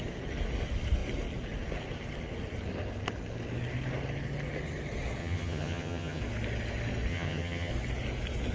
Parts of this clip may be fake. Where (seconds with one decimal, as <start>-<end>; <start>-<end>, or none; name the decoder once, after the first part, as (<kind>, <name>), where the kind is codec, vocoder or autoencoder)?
5.2-6.2 (vocoder, HiFi-GAN); 7.1-7.7